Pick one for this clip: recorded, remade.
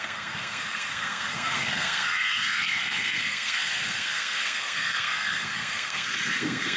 remade